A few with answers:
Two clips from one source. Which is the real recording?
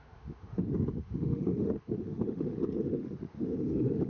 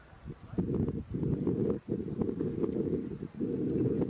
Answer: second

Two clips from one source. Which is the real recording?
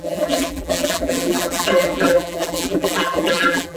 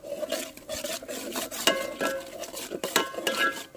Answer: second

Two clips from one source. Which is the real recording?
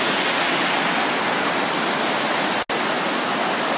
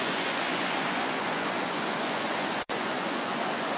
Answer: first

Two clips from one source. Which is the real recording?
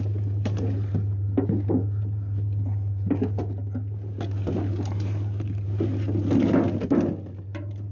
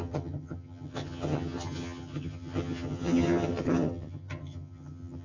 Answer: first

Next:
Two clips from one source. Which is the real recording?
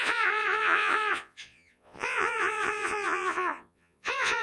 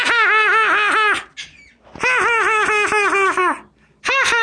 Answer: second